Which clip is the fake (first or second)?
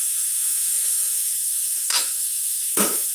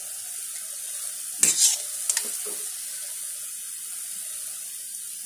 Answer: first